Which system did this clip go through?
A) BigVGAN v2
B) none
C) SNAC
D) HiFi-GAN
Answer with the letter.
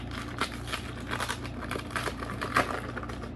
B